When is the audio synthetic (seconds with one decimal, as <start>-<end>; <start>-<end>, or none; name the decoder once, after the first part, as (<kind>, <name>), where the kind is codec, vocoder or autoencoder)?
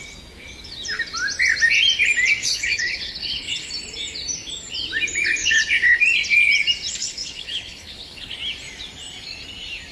2.4-3.7 (codec, HILCodec); 5.4-6.0; 7.0-8.3